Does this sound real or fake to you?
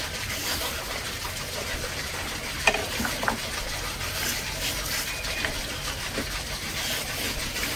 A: real